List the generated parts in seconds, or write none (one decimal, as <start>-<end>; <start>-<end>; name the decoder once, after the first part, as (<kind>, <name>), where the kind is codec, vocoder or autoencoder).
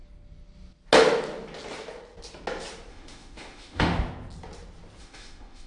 2.9-3.9 (autoencoder, DAC-VAE); 5.0-5.7